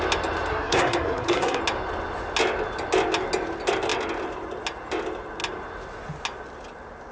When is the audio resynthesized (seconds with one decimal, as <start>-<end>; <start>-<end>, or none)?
0.5-1.6

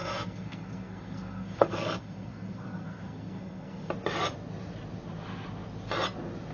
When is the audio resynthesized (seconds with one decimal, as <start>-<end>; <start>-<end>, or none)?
0.0-3.9

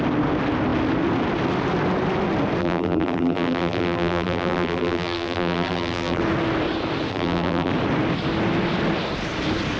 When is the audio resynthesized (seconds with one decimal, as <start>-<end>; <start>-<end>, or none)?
2.6-6.2; 7.1-7.7

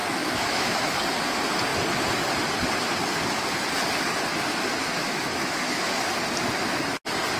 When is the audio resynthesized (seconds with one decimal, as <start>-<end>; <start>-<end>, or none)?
0.0-1.0; 4.8-6.0

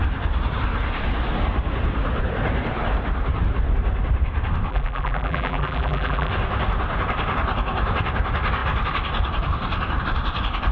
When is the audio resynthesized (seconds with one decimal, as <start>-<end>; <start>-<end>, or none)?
4.7-6.3

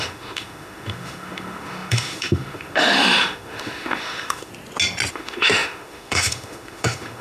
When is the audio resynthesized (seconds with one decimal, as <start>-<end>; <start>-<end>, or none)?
0.0-4.5; 5.1-7.2

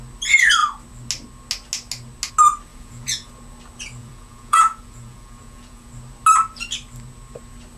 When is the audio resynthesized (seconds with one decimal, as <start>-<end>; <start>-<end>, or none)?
2.7-3.3; 4.0-5.9